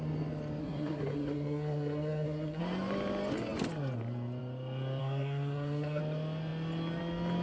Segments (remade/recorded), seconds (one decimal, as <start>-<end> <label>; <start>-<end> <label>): 0.0-0.6 recorded; 0.6-2.6 remade; 2.6-5.0 recorded; 5.0-6.0 remade; 6.0-7.4 recorded